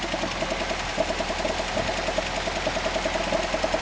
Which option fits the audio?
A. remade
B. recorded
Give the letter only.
B